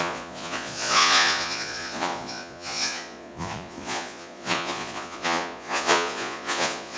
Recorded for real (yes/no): no